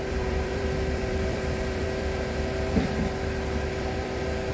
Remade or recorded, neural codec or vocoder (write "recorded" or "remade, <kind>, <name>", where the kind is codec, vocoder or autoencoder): remade, vocoder, BigVGAN v2